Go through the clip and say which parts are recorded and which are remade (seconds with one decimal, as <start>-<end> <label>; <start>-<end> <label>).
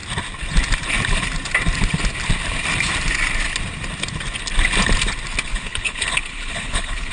0.0-5.5 recorded; 5.5-7.1 remade